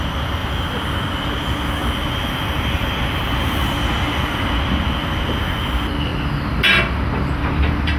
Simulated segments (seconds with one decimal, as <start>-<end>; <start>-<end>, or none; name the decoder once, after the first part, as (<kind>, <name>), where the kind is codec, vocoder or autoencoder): none